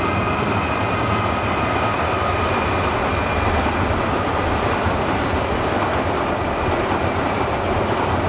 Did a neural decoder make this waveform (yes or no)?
no